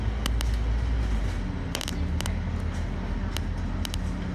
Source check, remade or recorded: recorded